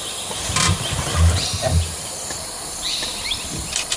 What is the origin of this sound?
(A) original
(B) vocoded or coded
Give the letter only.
A